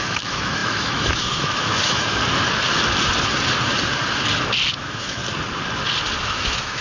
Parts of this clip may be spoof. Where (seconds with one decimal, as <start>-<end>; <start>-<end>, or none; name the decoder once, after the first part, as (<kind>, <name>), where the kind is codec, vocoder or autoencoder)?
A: 0.0-2.2 (autoencoder, DAC-VAE); 4.7-5.2; 6.2-6.8